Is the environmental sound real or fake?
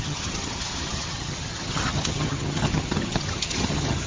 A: fake